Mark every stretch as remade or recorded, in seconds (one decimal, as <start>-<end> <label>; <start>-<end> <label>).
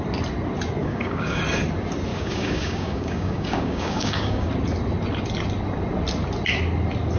0.0-0.8 recorded; 0.8-1.4 remade; 1.4-2.1 recorded; 2.1-4.5 remade; 4.5-7.2 recorded